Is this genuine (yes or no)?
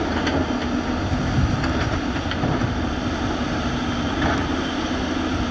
yes